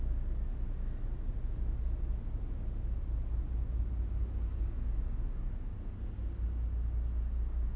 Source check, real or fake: real